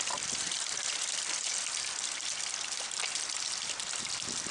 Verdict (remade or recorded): recorded